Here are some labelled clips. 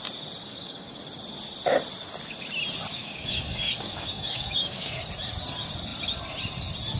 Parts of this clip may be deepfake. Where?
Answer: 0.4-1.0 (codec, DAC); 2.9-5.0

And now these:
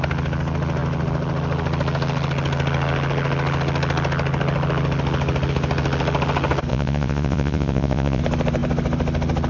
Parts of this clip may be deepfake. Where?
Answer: 6.7-8.2 (vocoder, Vocos)

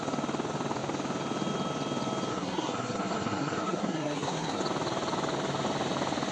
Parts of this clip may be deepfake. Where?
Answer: 2.3-4.6 (codec, SNAC)

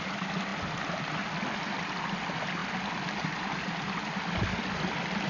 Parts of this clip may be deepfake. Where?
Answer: none

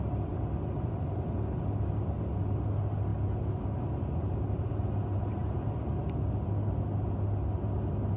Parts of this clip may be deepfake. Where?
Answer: none

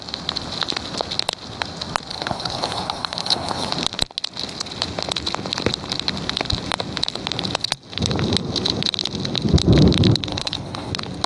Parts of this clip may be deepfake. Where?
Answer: 2.1-3.7 (codec, HILCodec); 10.3-10.9

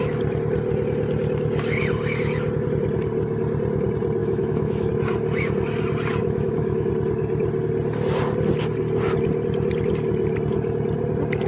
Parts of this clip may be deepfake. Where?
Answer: 4.2-4.9 (autoencoder, DAC-VAE); 6.2-6.9

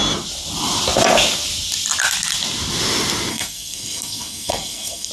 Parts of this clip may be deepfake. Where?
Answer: 3.3-5.1 (codec, SNAC)